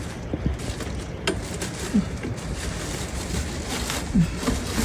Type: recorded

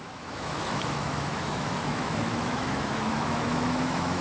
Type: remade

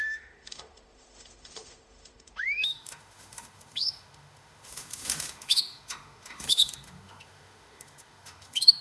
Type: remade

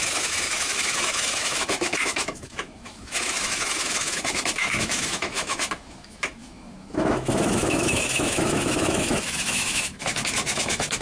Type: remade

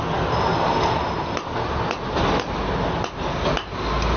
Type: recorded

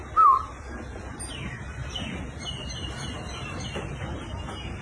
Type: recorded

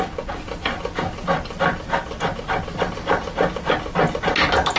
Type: recorded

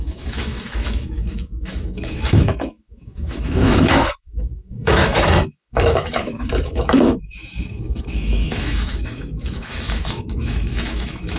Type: remade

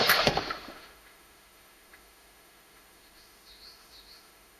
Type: remade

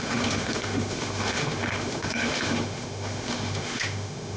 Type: remade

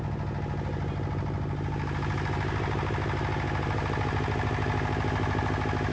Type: recorded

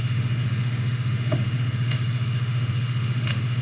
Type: remade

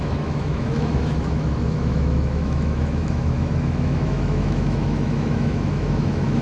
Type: remade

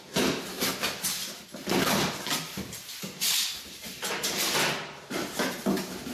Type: recorded